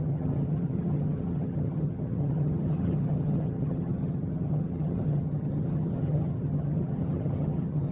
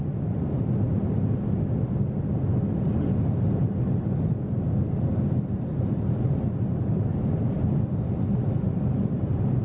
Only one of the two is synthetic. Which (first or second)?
first